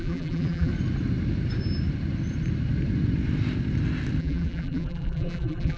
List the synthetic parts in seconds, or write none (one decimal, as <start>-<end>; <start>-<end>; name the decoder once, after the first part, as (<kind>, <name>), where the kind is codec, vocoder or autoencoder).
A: 0.0-0.7 (vocoder, BigVGAN v2); 4.2-5.8